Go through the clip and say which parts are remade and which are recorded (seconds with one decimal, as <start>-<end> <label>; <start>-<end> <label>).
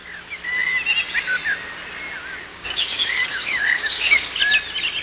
0.0-2.5 recorded; 2.5-4.4 remade; 4.4-5.0 recorded